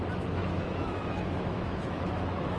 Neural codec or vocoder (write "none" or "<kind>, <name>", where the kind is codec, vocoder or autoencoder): autoencoder, DAC-VAE